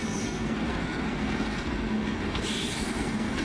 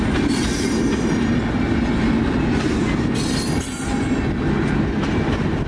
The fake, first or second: first